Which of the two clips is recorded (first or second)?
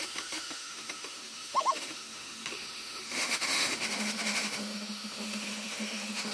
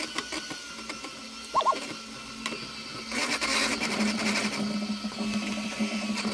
second